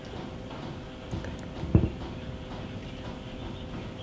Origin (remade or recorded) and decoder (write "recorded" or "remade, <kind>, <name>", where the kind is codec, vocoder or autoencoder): recorded